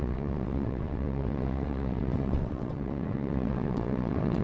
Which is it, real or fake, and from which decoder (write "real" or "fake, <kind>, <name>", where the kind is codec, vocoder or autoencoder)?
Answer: fake, vocoder, WaveNeXt